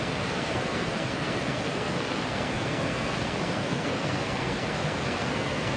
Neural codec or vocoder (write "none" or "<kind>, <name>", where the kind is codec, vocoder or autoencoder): codec, SNAC